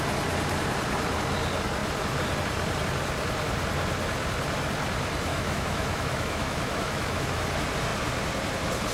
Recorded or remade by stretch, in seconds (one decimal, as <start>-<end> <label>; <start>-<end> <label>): 0.0-5.3 recorded; 5.3-7.4 remade; 7.4-8.9 recorded